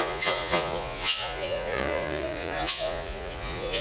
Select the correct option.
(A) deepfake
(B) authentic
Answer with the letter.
A